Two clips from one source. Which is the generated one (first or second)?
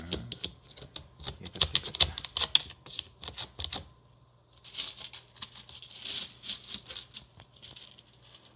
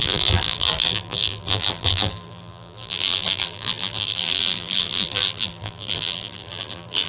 second